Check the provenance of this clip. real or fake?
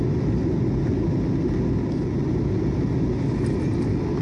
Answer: real